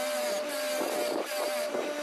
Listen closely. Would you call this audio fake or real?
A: real